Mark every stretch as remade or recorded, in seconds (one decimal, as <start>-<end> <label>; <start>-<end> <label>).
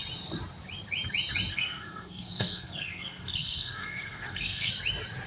0.0-1.5 recorded; 1.5-4.7 remade; 4.7-5.3 recorded